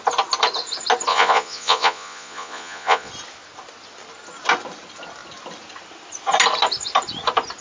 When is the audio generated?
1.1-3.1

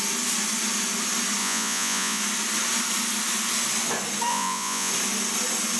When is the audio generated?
1.4-2.2; 4.3-4.9

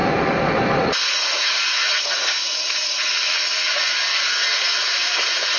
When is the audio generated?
0.8-3.1; 3.7-5.6

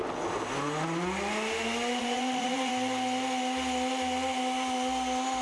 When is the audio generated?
2.0-2.7

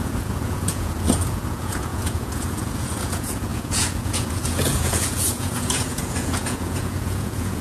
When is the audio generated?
0.0-7.6

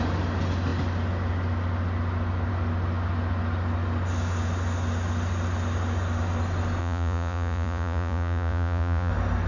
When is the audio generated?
6.8-9.1

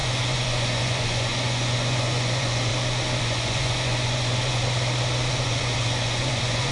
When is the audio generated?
0.0-2.7; 3.2-4.6; 5.3-6.7

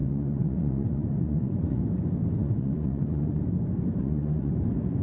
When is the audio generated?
0.0-1.8; 2.4-3.4; 4.0-4.5